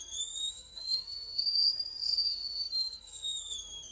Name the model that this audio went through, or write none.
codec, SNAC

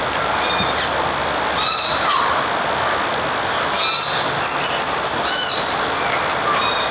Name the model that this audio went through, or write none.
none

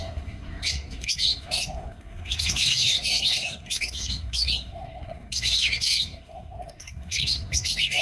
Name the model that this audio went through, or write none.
codec, SNAC